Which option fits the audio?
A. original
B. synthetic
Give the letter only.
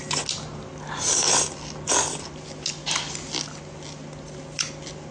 A